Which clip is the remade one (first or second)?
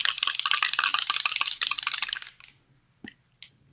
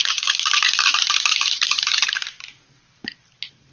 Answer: second